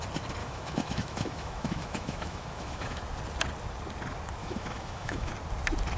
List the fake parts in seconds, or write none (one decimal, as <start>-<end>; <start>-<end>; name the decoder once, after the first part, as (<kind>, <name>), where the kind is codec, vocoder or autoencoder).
0.4-3.0 (autoencoder, DAC-VAE); 4.4-5.3